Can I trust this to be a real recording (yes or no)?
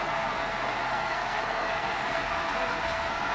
no